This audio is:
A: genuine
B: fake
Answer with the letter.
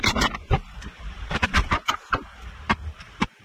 B